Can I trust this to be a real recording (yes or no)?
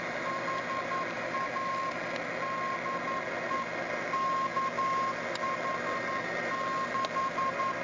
yes